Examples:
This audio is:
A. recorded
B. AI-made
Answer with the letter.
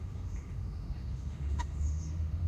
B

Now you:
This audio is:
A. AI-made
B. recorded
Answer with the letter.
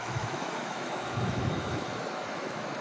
A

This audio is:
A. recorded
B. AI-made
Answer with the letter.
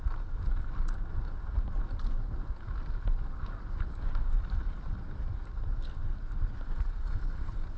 A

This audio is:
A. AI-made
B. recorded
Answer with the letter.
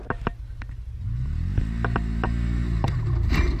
B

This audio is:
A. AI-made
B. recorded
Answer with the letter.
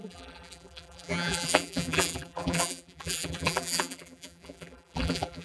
A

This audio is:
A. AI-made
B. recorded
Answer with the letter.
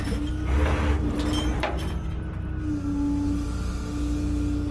B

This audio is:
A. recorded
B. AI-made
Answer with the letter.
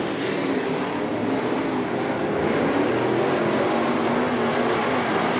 A